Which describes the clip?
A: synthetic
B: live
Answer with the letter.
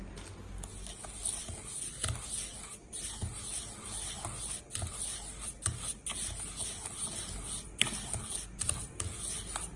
B